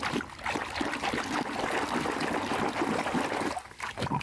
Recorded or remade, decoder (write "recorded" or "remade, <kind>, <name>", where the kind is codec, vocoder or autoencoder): recorded